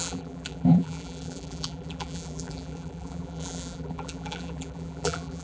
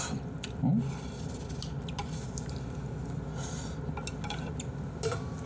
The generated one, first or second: first